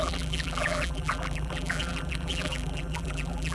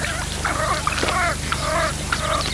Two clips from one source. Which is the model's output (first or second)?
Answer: first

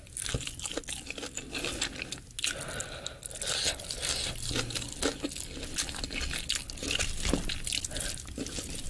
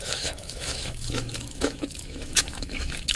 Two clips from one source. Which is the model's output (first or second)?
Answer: second